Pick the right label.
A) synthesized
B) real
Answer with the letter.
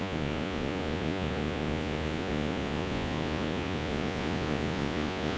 A